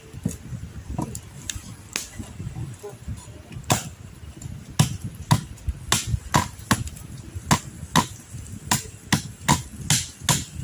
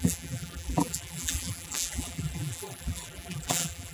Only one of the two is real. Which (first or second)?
first